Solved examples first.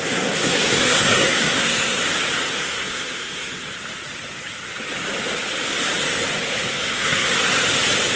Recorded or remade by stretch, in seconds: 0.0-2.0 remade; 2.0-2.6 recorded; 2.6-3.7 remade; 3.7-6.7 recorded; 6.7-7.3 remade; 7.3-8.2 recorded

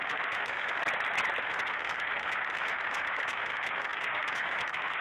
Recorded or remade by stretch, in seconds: 0.0-0.8 remade; 0.8-1.4 recorded; 1.4-5.0 remade

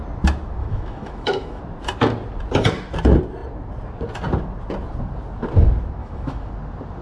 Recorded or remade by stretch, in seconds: 0.0-0.6 recorded; 0.6-1.6 remade; 1.6-6.0 recorded; 6.0-6.5 remade; 6.5-7.0 recorded

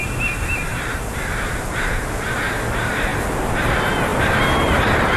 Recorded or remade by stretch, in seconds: 0.0-0.7 recorded; 0.7-1.5 remade; 1.5-4.1 recorded; 4.1-4.7 remade; 4.7-5.2 recorded

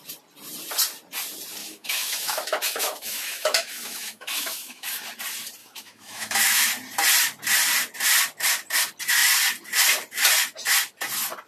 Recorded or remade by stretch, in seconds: 0.0-1.6 recorded; 1.6-5.0 remade; 5.0-5.6 recorded; 5.6-6.7 remade; 6.7-11.5 recorded

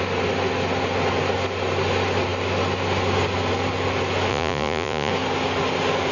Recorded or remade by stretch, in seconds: 0.0-4.3 recorded; 4.3-5.1 remade; 5.1-6.1 recorded